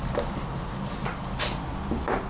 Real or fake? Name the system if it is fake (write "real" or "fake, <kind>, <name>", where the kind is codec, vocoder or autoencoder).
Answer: real